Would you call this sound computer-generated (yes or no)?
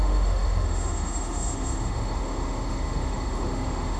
yes